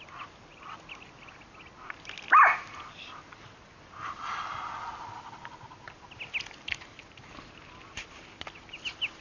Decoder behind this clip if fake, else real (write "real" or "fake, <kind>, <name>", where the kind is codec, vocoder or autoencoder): real